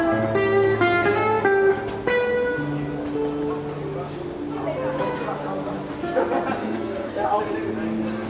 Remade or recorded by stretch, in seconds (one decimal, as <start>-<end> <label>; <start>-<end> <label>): 0.0-6.6 recorded; 6.6-7.4 remade; 7.4-8.3 recorded